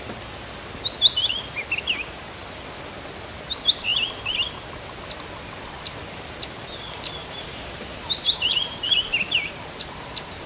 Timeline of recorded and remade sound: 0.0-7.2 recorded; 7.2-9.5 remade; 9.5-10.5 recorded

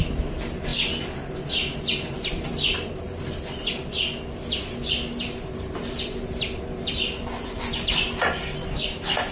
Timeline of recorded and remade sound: 0.0-9.3 recorded

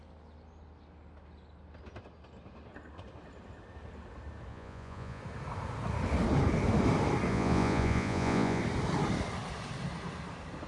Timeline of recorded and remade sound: 0.0-4.5 recorded; 4.5-5.2 remade; 5.2-7.3 recorded; 7.3-8.6 remade; 8.6-10.7 recorded

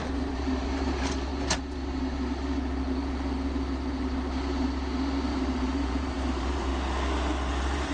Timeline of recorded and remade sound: 0.0-1.3 remade; 1.3-5.3 recorded; 5.3-6.7 remade; 6.7-7.5 recorded; 7.5-7.9 remade

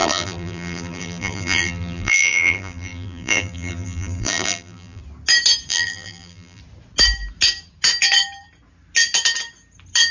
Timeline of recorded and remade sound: 0.0-5.0 remade; 5.0-5.7 recorded; 5.7-6.6 remade; 6.6-10.1 recorded

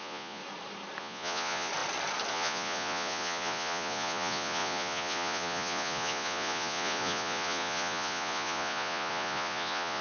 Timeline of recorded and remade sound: 0.0-0.4 remade; 0.4-1.0 recorded; 1.0-1.7 remade; 1.7-2.3 recorded; 2.3-10.0 remade